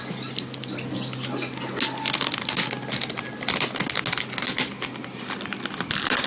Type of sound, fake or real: real